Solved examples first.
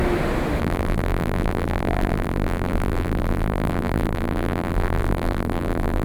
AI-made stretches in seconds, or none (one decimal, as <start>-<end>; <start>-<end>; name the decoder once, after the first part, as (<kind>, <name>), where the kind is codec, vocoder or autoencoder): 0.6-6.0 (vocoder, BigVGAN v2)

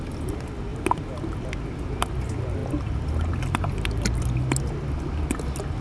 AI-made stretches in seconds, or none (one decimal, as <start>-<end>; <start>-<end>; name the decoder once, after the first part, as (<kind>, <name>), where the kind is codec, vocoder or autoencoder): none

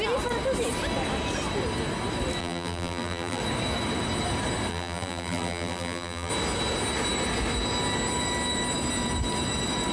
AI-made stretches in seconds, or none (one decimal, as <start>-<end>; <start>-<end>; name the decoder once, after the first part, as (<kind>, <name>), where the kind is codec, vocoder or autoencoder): 2.4-3.4 (vocoder, BigVGAN v2); 4.7-6.3

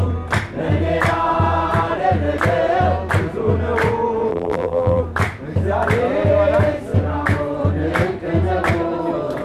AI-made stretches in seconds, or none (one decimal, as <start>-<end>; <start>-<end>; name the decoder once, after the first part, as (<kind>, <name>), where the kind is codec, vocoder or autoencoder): 4.3-5.0 (vocoder, BigVGAN v2)

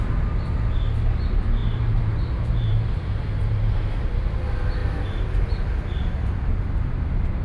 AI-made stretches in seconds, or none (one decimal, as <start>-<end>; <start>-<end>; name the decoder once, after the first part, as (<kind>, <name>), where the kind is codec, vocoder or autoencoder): 1.6-4.2 (vocoder, BigVGAN v2)